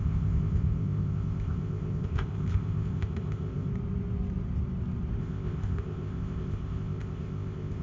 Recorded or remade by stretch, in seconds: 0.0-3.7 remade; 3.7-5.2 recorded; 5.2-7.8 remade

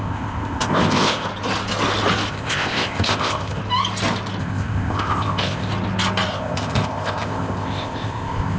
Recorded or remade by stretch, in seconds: 0.0-1.3 remade; 1.3-2.3 recorded; 2.3-3.6 remade; 3.6-4.4 recorded; 4.4-5.7 remade; 5.7-6.3 recorded; 6.3-8.6 remade

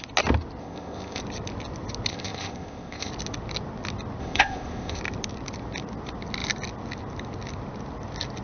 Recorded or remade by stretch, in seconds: 0.0-0.6 recorded; 0.6-1.2 remade; 1.2-2.1 recorded; 2.1-3.1 remade; 3.1-4.2 recorded; 4.2-5.0 remade; 5.0-8.4 recorded

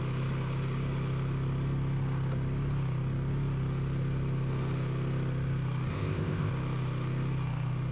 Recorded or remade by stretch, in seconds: 0.0-5.9 recorded; 5.9-6.5 remade; 6.5-7.9 recorded

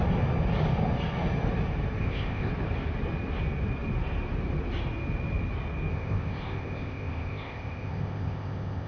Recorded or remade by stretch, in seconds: 0.0-2.0 recorded; 2.0-2.5 remade; 2.5-5.9 recorded; 5.9-8.9 remade